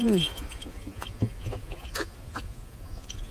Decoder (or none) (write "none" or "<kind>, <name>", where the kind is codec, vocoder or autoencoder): vocoder, Vocos